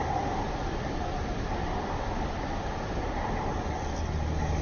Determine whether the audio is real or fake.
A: real